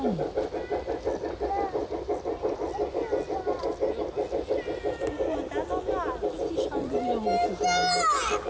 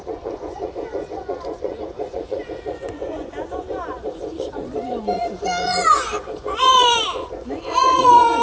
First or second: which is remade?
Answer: second